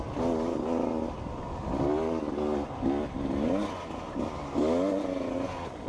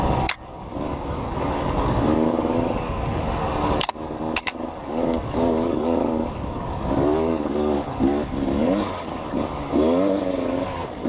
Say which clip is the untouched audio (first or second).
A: first